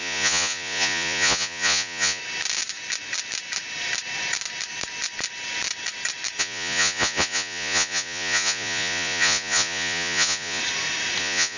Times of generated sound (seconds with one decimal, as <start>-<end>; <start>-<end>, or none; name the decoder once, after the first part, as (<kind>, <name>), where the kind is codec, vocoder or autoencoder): 0.0-2.2 (vocoder, Vocos); 6.4-10.6; 11.2-11.6